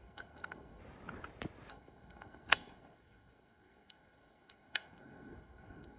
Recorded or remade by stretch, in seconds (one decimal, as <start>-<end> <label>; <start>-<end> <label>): 0.0-0.8 remade; 0.8-1.7 recorded; 1.7-6.0 remade